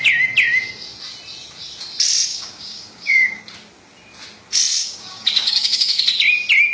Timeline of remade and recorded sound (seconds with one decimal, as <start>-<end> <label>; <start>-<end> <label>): 0.0-2.3 recorded; 2.3-3.4 remade; 3.4-4.8 recorded; 4.8-6.0 remade; 6.0-6.7 recorded